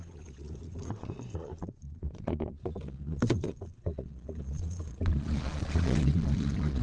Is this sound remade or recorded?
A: remade